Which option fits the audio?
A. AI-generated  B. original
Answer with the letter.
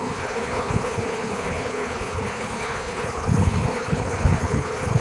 A